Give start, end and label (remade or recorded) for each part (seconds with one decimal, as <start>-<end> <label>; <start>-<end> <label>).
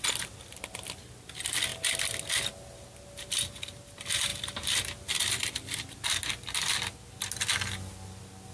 0.0-4.3 recorded; 4.3-6.1 remade; 6.1-8.5 recorded